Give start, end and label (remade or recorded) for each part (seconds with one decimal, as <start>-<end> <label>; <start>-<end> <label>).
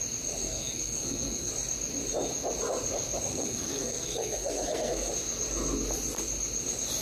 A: 0.0-0.4 recorded; 0.4-1.5 remade; 1.5-3.3 recorded; 3.3-5.1 remade; 5.1-7.0 recorded